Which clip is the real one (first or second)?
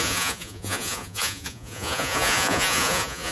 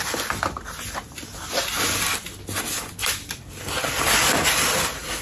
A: second